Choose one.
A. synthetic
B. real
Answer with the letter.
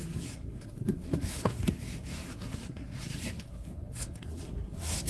A